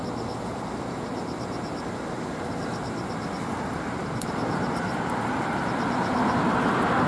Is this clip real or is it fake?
real